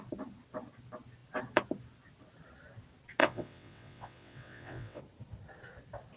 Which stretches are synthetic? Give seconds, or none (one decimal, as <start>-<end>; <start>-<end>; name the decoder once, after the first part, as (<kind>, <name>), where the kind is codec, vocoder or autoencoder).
3.2-5.0 (vocoder, WaveNeXt)